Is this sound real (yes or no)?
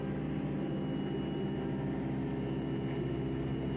yes